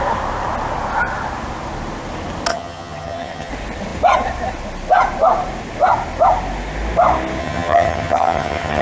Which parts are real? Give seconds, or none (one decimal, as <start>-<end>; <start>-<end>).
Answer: 0.0-2.5; 3.5-7.4